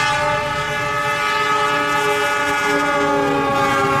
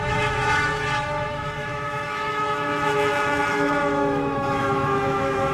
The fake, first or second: second